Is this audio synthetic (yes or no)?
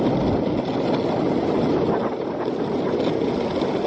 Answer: no